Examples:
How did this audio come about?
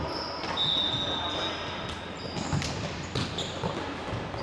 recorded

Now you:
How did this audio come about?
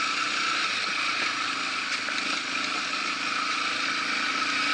recorded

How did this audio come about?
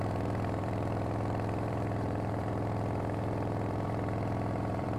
remade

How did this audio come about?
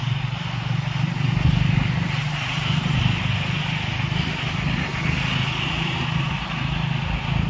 recorded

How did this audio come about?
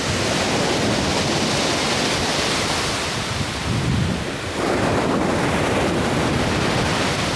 recorded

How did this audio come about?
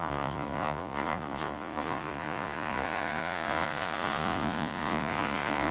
remade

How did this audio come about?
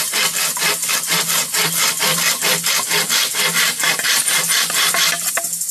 recorded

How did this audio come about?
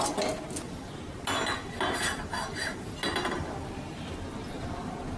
recorded